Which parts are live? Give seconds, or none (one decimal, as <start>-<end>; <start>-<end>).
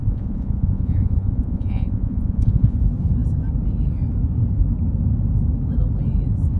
2.8-6.6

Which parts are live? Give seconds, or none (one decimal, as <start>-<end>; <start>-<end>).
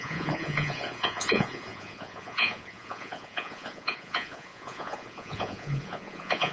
none